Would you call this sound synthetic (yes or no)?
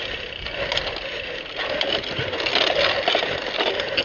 no